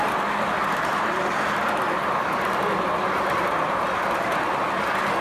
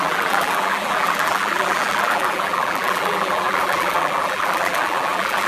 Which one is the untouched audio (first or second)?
first